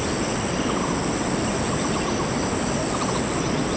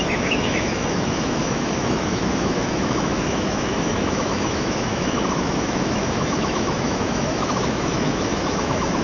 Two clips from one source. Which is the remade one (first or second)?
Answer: second